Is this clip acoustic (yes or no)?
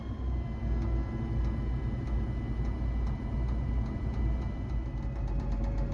yes